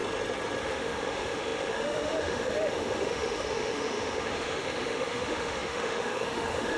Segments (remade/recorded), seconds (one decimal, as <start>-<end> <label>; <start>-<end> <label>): 0.0-0.6 recorded; 0.6-6.8 remade